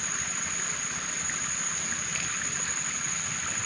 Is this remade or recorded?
recorded